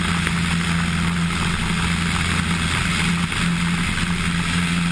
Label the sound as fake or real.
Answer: real